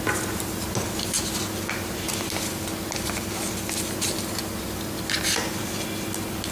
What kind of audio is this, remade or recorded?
recorded